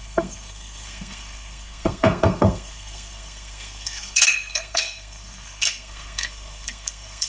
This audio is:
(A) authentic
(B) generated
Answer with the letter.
B